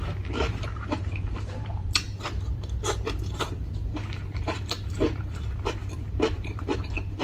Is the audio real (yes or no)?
no